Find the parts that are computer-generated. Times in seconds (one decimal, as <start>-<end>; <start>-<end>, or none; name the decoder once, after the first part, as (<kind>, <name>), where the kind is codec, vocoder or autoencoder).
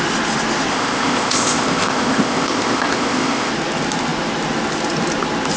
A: 0.7-3.5 (codec, ZipCodec)